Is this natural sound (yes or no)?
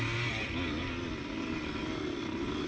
yes